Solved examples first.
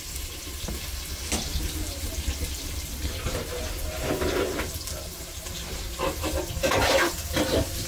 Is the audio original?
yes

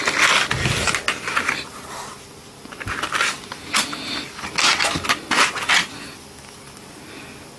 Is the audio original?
yes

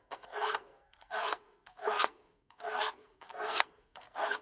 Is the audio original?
no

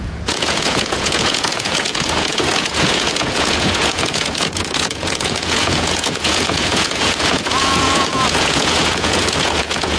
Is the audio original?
no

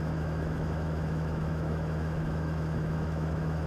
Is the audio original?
no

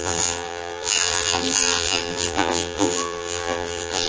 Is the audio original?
no